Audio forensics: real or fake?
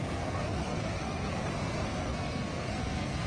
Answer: fake